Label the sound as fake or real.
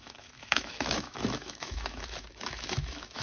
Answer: fake